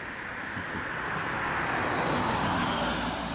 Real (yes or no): yes